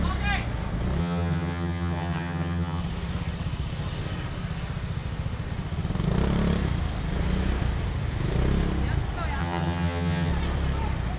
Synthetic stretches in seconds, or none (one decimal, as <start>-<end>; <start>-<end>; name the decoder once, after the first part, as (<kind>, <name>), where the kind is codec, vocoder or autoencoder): 1.0-2.8 (vocoder, HiFi-GAN); 9.4-10.3